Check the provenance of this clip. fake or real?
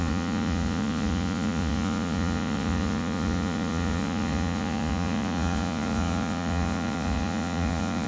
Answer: fake